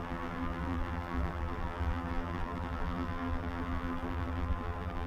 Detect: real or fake fake